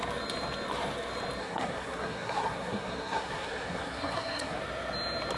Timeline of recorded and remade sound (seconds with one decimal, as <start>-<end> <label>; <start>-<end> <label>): 0.0-1.4 recorded; 1.4-4.6 remade; 4.6-5.4 recorded